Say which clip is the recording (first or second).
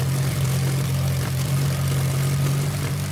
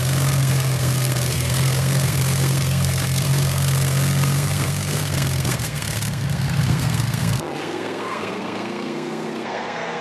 first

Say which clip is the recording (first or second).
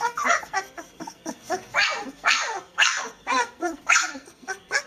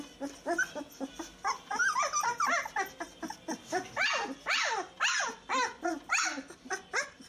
second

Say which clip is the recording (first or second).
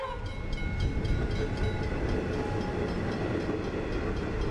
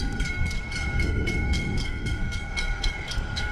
first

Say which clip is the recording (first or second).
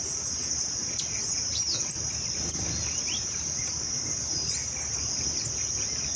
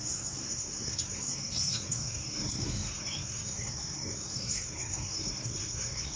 first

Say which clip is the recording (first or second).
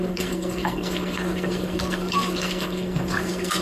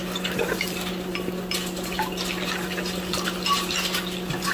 second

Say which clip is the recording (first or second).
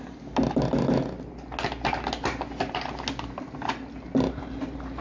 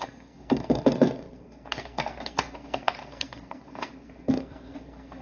first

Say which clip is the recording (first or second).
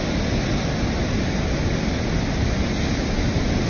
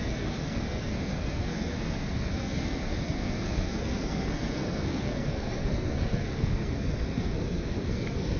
first